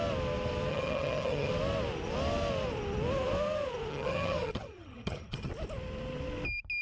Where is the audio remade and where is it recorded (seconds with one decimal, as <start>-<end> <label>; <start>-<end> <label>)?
0.0-0.7 recorded; 0.7-1.5 remade; 1.5-3.9 recorded; 3.9-5.5 remade; 5.5-6.8 recorded